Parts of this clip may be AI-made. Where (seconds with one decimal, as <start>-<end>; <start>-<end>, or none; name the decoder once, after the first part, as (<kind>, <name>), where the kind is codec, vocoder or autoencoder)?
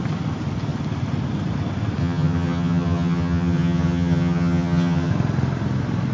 2.0-5.1 (vocoder, HiFi-GAN)